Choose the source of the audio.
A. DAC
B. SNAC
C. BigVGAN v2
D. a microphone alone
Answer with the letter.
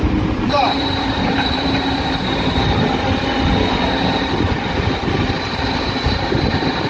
C